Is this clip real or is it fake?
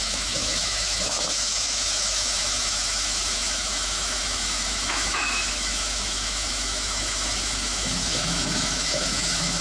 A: fake